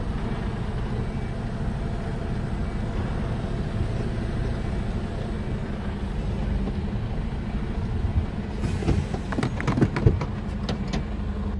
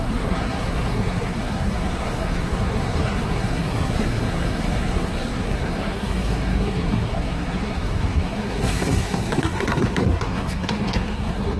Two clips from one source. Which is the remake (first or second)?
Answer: second